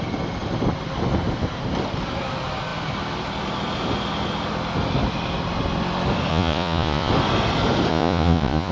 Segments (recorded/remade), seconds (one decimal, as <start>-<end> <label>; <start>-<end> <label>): 0.0-6.3 recorded; 6.3-7.1 remade; 7.1-7.9 recorded; 7.9-8.7 remade